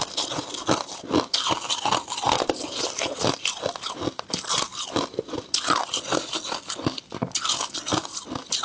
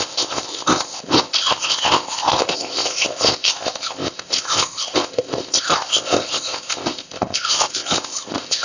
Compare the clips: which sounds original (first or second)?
first